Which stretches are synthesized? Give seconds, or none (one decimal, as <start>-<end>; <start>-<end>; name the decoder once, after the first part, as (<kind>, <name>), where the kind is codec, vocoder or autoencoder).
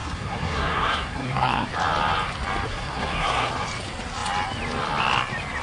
0.0-1.7 (codec, SNAC); 2.7-3.5